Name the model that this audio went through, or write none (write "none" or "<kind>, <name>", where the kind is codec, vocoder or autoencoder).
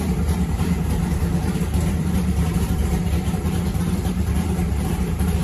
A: vocoder, BigVGAN v2